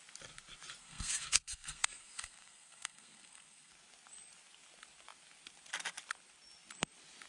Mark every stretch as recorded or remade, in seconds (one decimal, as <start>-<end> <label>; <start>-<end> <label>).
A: 0.0-0.8 recorded; 0.8-3.7 remade; 3.7-7.3 recorded